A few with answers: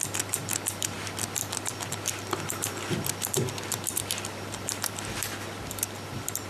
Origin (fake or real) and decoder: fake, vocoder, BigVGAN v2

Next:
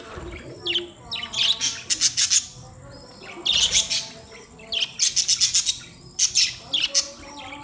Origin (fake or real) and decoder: real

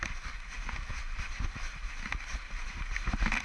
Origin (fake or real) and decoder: real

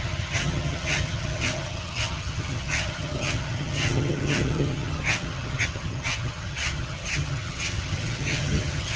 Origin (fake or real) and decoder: fake, vocoder, HiFi-GAN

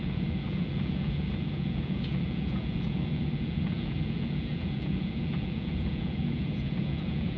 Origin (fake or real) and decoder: fake, vocoder, Vocos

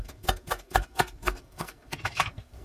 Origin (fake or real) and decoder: fake, codec, SNAC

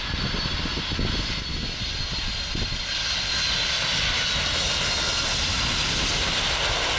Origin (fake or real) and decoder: real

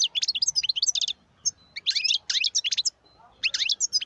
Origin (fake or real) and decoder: real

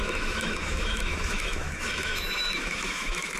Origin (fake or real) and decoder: fake, autoencoder, DAC-VAE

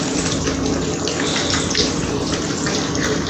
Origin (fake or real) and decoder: real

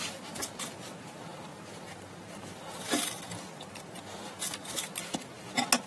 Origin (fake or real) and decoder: real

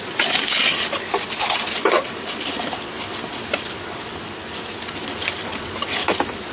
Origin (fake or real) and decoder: real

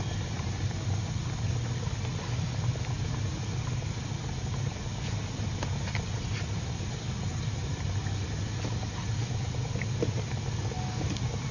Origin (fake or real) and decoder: real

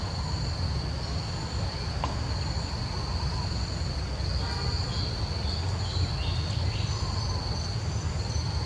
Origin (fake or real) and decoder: real